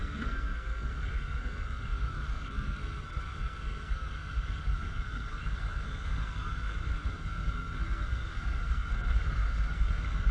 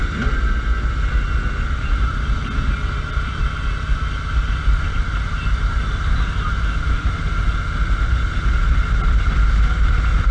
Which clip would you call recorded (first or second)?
second